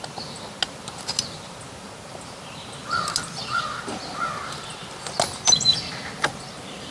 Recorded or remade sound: recorded